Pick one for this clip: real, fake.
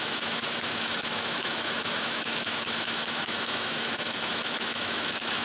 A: fake